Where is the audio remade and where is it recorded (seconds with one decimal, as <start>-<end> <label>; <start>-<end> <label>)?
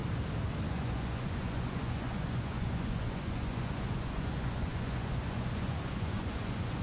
0.0-0.7 recorded; 0.7-6.8 remade